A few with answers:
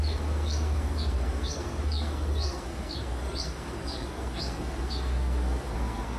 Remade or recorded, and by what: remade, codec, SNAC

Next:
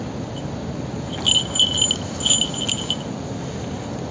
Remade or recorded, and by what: recorded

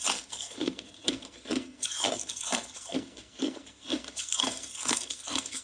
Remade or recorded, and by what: remade, codec, SNAC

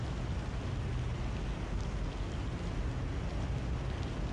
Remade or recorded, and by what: recorded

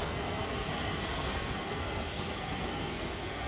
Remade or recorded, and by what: remade, codec, SNAC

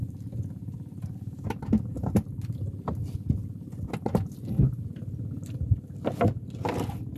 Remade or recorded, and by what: recorded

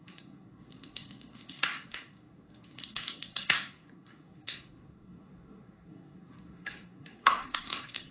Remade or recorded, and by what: remade, codec, SNAC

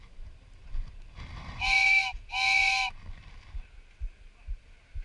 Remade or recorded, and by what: recorded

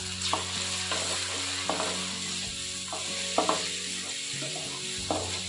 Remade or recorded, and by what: recorded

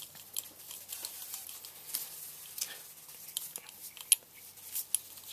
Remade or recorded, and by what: recorded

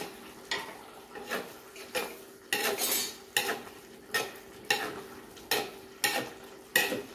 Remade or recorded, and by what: recorded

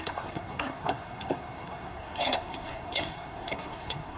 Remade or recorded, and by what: remade, codec, SNAC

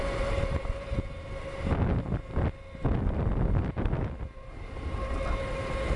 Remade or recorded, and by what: recorded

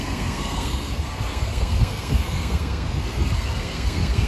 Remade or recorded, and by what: remade, codec, SNAC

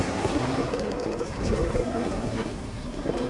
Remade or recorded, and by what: remade, codec, SNAC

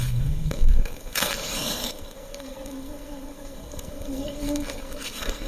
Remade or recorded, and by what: remade, codec, SNAC